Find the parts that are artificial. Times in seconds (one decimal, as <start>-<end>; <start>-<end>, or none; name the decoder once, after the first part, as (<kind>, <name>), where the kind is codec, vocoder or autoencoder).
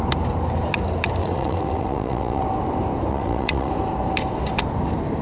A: 1.2-2.4 (vocoder, WaveNeXt); 3.1-3.7